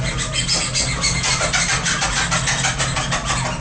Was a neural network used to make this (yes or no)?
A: no